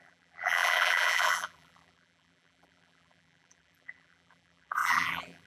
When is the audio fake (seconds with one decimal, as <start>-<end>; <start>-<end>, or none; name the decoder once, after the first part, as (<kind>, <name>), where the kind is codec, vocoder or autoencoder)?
0.0-5.5 (vocoder, BigVGAN v2)